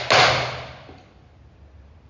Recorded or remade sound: recorded